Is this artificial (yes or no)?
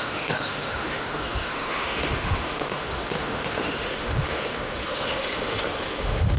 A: yes